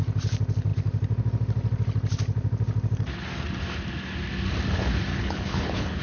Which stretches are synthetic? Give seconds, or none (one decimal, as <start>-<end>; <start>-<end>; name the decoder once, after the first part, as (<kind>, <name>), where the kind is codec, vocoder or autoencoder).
5.1-6.0 (codec, HILCodec)

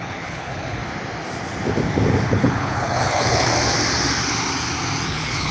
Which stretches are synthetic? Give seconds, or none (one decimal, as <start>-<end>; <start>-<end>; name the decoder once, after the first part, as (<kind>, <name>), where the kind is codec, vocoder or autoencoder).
0.0-0.8 (codec, HILCodec); 2.3-3.5; 5.1-5.5

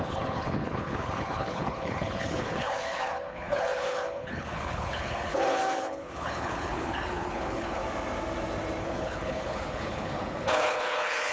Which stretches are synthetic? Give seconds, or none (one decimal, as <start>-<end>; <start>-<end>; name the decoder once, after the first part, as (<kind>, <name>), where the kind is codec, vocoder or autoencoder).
0.0-7.8 (codec, HILCodec); 8.8-11.3

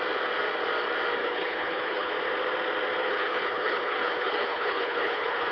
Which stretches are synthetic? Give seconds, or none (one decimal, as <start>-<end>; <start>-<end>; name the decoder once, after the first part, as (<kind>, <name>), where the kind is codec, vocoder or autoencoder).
1.2-2.1 (codec, HILCodec); 3.0-5.5

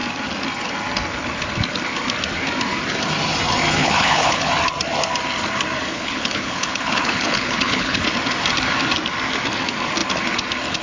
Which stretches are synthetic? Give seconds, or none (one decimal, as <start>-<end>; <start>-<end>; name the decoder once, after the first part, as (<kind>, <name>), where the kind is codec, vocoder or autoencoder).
3.8-4.5 (codec, HILCodec); 5.9-8.0

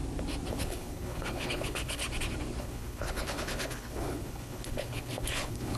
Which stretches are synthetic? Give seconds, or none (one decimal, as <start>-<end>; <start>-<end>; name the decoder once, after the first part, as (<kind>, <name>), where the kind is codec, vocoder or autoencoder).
0.5-2.0 (codec, HILCodec); 2.6-5.8